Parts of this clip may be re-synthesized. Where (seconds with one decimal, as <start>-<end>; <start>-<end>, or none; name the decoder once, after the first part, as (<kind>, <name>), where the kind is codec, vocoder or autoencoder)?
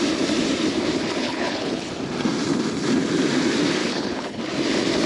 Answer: 1.2-1.9 (codec, HILCodec); 3.8-4.4